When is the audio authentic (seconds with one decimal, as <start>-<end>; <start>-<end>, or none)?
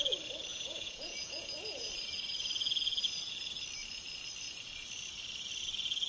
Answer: 0.0-0.5; 1.9-6.1